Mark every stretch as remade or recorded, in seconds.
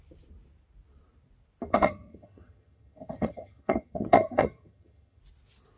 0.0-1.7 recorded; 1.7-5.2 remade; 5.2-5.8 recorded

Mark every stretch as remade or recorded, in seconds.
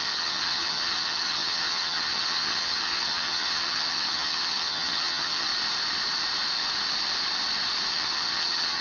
0.0-5.5 remade; 5.5-7.9 recorded; 7.9-8.8 remade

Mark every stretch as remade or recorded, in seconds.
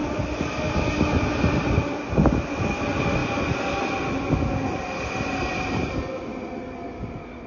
0.0-7.5 recorded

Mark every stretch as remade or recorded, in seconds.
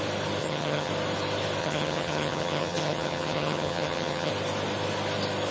0.0-0.4 recorded; 0.4-0.9 remade; 0.9-1.6 recorded; 1.6-4.3 remade; 4.3-5.5 recorded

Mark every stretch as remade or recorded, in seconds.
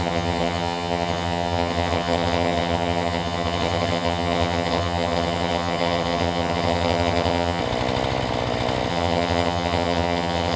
0.0-7.6 remade; 7.6-8.9 recorded; 8.9-10.6 remade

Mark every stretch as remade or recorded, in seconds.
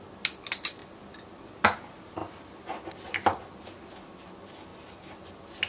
0.0-5.7 recorded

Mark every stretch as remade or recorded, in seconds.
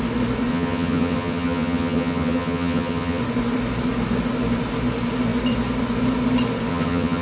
0.0-0.5 recorded; 0.5-3.2 remade; 3.2-6.7 recorded; 6.7-7.2 remade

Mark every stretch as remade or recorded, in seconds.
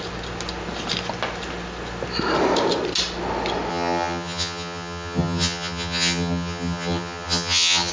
0.0-3.7 recorded; 3.7-7.9 remade